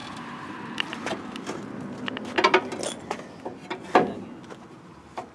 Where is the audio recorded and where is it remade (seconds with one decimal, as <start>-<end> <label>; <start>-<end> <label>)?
0.0-1.2 remade; 1.2-5.3 recorded